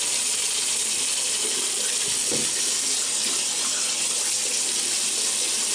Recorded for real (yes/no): yes